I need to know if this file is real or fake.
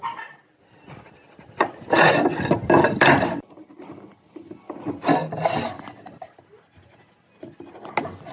real